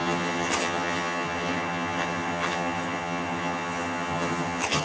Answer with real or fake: fake